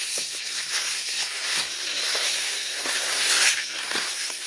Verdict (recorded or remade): remade